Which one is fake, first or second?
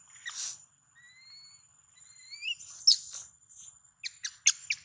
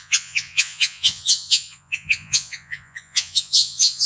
second